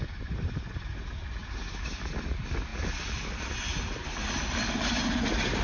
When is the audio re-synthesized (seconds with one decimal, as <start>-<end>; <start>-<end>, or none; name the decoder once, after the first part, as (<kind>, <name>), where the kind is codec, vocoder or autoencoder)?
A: none